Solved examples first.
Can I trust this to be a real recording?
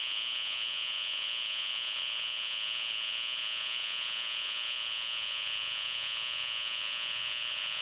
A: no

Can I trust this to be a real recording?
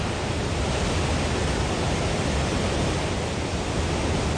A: yes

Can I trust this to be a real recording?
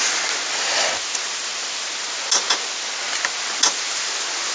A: yes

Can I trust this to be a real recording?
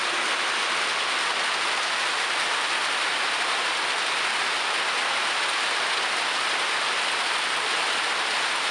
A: yes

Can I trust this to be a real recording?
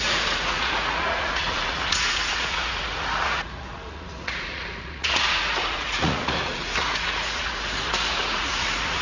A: no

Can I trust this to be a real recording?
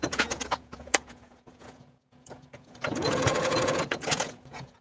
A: no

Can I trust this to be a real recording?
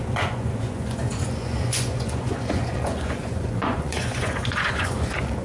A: no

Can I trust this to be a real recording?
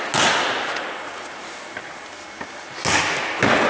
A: yes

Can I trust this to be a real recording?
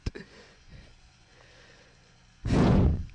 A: no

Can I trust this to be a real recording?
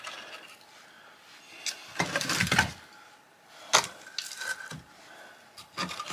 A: yes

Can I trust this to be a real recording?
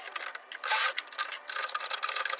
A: yes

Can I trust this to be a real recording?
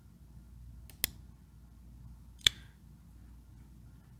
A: yes